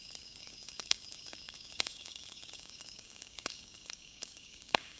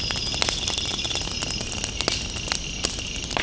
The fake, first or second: first